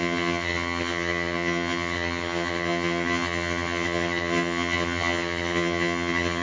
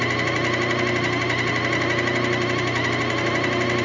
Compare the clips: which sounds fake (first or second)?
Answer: first